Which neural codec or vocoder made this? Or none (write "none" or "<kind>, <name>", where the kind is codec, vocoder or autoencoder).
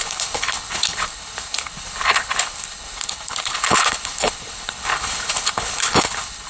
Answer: codec, HILCodec